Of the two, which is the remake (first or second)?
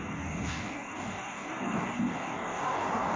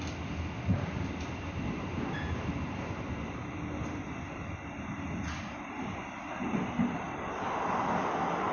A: first